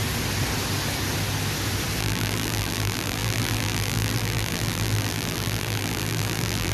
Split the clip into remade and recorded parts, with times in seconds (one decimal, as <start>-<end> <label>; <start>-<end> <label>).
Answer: 0.0-2.0 recorded; 2.0-6.7 remade